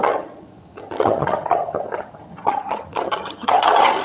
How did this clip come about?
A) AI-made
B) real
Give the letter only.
A